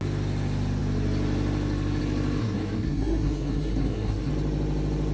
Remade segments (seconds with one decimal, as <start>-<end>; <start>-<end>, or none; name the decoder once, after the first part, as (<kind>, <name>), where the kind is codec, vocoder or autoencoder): 2.4-4.3 (codec, SNAC)